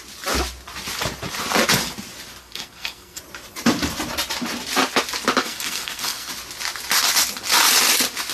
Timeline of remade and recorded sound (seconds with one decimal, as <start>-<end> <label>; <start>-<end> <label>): 0.0-2.4 recorded; 2.4-3.2 remade; 3.2-5.4 recorded; 5.4-6.3 remade; 6.3-8.3 recorded